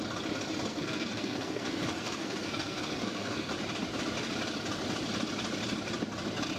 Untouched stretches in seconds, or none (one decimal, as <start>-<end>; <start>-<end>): 0.0-0.7; 3.5-6.6